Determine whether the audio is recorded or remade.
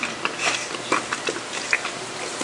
recorded